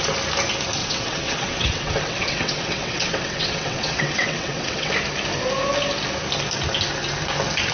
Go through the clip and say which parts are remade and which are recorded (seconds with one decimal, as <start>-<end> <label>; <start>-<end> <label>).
0.0-0.8 recorded; 0.8-4.9 remade; 4.9-7.7 recorded